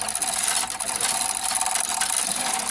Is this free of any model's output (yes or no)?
yes